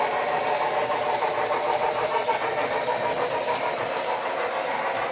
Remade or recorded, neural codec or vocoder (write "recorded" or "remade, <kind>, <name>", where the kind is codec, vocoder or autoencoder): recorded